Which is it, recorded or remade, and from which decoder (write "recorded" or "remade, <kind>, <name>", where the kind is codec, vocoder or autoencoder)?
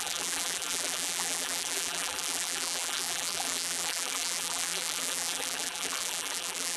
remade, vocoder, BigVGAN v2